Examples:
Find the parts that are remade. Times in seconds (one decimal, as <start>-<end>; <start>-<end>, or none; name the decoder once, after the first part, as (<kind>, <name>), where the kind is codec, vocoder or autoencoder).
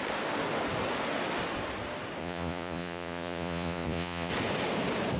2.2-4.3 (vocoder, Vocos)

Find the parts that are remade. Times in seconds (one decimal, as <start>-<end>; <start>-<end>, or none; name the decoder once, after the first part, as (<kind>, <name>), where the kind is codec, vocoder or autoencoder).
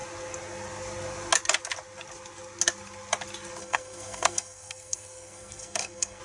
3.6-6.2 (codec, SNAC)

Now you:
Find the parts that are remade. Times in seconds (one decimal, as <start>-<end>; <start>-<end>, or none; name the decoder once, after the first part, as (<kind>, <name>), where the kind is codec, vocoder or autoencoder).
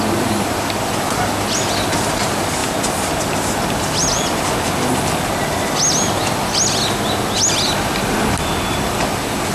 none